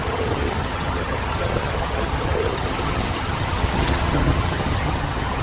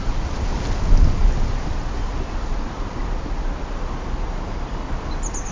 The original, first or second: second